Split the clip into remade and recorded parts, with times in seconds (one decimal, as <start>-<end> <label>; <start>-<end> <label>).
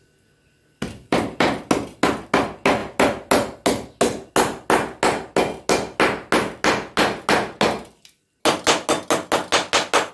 0.0-1.0 recorded; 1.0-1.6 remade; 1.6-10.1 recorded